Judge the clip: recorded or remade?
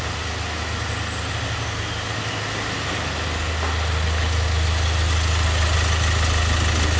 recorded